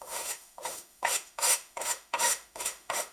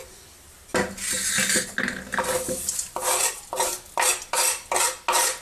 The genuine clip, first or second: second